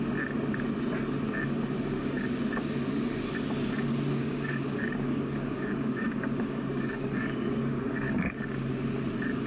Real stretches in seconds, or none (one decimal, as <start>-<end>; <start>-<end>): 0.0-4.2; 8.4-9.5